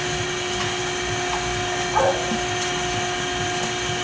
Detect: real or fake real